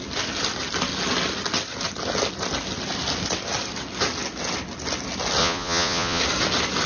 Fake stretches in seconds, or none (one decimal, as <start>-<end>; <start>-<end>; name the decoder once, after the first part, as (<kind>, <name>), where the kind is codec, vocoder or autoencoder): 5.4-6.2 (vocoder, Vocos)